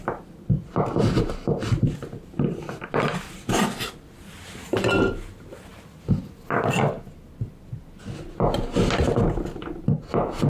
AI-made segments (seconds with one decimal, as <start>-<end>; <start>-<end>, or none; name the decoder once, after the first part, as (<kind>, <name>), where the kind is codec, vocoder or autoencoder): none